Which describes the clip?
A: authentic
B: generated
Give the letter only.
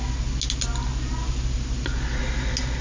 A